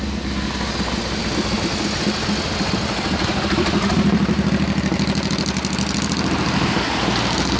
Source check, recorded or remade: recorded